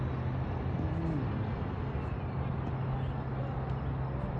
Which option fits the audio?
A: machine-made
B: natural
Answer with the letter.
B